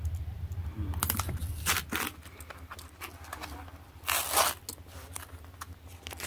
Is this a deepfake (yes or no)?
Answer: no